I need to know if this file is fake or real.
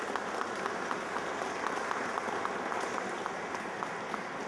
real